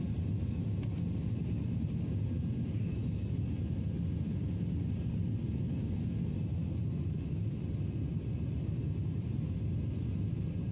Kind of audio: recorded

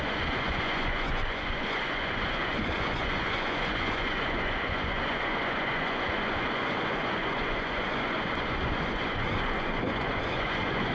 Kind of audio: remade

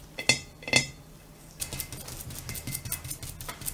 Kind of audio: recorded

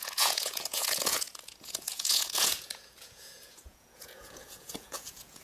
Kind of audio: remade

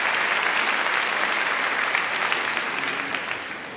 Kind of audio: recorded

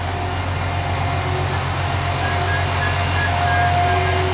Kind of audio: recorded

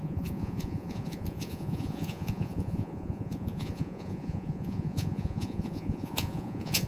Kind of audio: remade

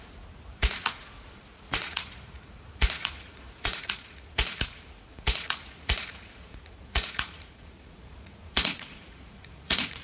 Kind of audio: remade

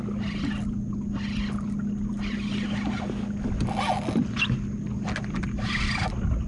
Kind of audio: recorded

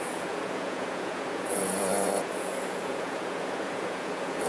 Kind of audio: remade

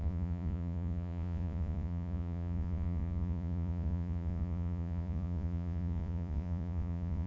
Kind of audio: remade